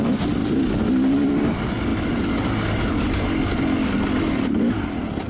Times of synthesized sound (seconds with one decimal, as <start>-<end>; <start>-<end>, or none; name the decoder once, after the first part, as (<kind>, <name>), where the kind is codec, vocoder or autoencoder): none